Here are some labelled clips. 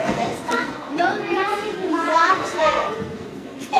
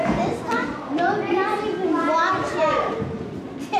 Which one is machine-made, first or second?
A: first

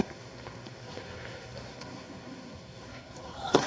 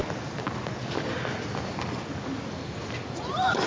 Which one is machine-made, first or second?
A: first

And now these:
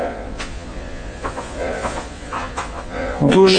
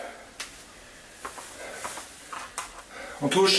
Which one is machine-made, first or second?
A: first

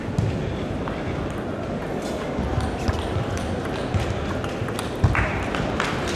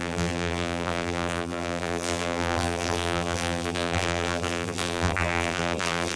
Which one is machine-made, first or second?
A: second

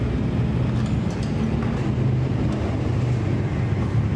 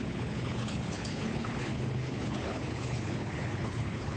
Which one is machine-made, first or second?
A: second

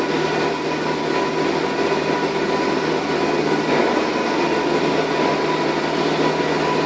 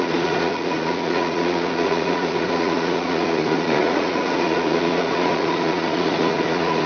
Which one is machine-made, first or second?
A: second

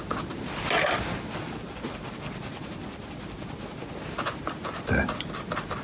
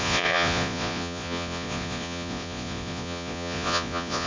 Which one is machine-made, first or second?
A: second